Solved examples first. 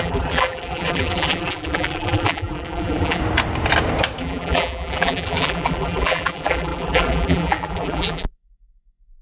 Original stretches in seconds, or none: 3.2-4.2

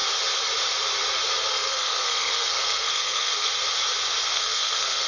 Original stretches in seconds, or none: 0.0-1.5; 3.5-4.3

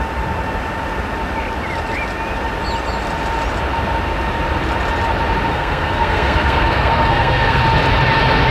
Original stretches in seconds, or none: 0.0-5.5; 7.6-8.5

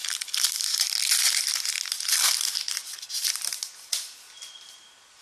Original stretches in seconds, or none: 0.0-5.2

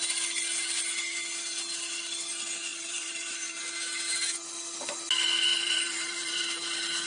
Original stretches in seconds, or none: 0.0-2.7; 3.6-5.5; 6.4-7.1

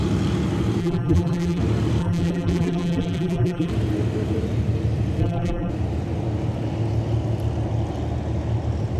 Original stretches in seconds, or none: 0.0-0.8; 1.6-2.0; 3.7-5.2; 5.7-9.0

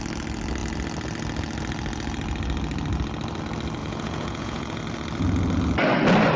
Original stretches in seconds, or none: 0.0-3.8; 4.8-6.4